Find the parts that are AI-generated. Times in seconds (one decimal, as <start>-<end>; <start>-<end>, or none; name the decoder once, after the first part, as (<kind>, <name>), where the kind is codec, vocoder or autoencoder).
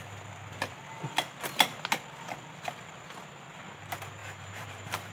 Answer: 4.2-5.1 (vocoder, BigVGAN v2)